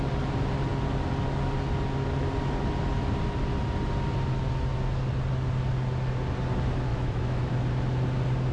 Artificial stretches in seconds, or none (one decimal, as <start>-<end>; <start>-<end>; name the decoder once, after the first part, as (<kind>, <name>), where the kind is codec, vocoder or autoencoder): 6.9-7.5 (autoencoder, DAC-VAE)